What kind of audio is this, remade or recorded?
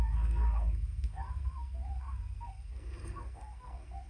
remade